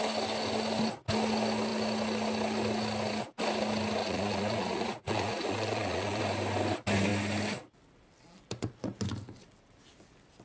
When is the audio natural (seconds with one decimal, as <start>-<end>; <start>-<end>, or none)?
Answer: 0.0-4.0; 6.2-10.4